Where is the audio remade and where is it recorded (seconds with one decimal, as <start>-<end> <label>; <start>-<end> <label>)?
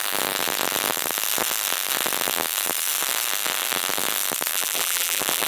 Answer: 0.0-4.5 recorded; 4.5-5.5 remade